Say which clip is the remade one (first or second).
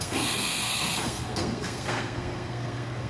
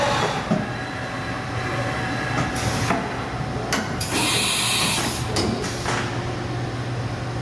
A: first